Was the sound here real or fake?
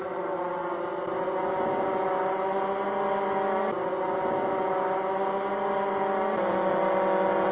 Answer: real